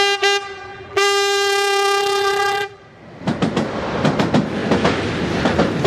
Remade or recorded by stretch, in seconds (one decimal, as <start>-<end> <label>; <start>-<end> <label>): 0.0-0.7 recorded; 0.7-2.8 remade; 2.8-5.9 recorded